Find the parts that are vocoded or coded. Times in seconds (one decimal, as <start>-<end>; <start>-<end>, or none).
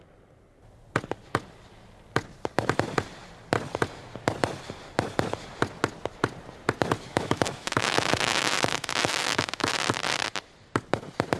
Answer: 7.1-9.7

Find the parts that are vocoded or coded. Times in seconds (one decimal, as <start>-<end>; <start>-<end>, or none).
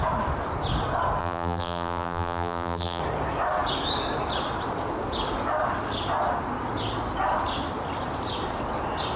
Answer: 1.2-3.0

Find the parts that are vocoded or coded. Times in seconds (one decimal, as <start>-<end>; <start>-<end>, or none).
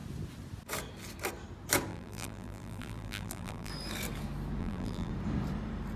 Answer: 1.9-3.7; 4.6-5.1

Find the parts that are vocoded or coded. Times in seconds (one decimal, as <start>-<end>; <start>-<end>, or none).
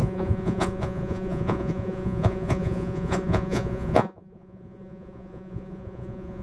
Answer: 0.0-6.4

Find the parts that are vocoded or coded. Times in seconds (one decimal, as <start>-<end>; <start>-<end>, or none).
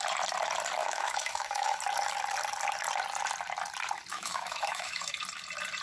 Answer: 0.8-1.8; 4.1-5.1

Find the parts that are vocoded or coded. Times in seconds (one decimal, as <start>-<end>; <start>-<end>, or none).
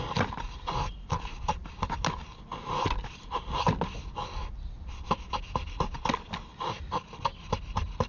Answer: none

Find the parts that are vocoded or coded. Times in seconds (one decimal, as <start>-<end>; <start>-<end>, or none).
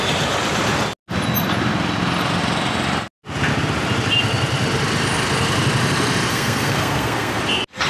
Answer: 6.3-7.4